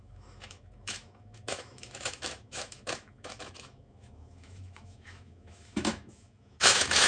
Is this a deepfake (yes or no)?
yes